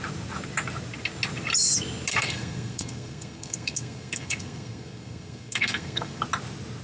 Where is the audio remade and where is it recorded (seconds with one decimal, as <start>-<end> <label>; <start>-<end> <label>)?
0.0-2.1 recorded; 2.1-6.2 remade; 6.2-6.8 recorded